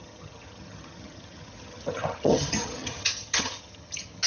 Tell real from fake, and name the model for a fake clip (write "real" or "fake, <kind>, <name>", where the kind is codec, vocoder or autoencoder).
fake, vocoder, HiFi-GAN